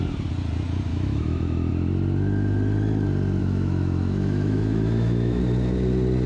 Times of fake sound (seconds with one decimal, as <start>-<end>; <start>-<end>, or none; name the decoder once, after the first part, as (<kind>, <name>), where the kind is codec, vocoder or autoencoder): 0.9-1.7 (autoencoder, DAC-VAE); 3.4-5.4